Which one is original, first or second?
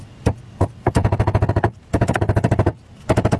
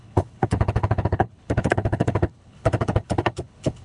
first